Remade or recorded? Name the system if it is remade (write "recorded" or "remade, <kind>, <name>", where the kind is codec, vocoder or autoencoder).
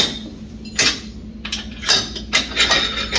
recorded